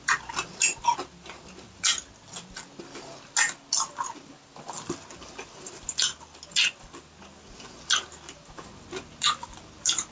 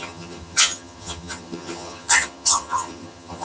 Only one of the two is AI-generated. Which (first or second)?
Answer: second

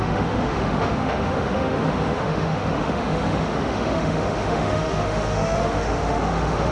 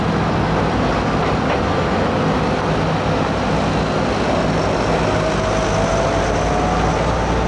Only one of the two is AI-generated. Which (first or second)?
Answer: first